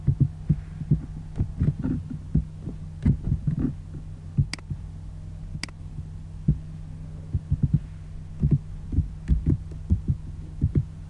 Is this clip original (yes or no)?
yes